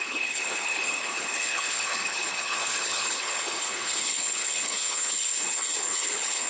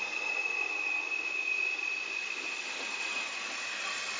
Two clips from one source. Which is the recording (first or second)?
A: second